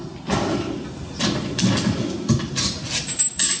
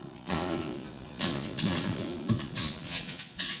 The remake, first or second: second